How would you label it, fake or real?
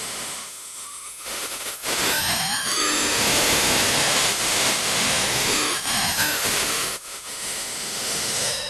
fake